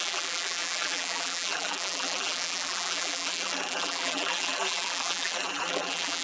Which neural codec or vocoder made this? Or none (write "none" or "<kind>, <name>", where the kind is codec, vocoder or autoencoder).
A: vocoder, BigVGAN v2